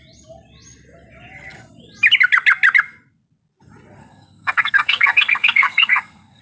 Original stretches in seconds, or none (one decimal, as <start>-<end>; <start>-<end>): 0.0-4.0